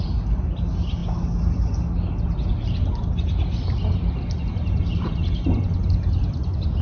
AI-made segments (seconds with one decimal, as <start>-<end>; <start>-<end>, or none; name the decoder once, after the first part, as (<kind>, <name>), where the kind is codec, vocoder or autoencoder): none